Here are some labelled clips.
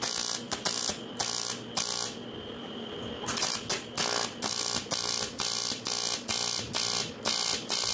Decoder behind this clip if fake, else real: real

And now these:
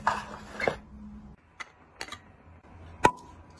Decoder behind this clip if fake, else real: real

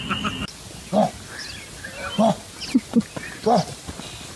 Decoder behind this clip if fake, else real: real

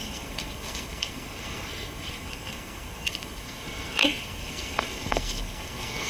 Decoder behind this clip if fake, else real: fake, codec, SNAC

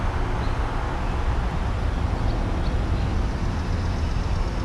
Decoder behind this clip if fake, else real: real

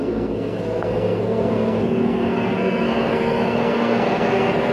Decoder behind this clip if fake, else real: fake, codec, SNAC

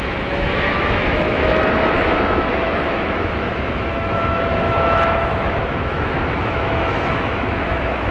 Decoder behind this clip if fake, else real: fake, autoencoder, DAC-VAE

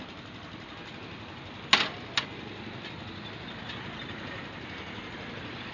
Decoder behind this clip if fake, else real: real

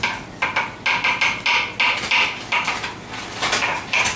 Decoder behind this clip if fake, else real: real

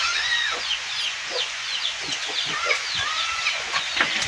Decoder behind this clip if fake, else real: fake, vocoder, Vocos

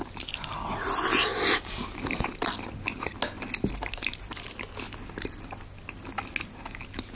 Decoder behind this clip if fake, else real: real